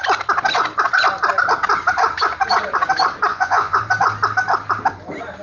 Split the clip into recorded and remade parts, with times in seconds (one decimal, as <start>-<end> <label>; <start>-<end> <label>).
0.0-3.3 recorded; 3.3-3.8 remade; 3.8-5.4 recorded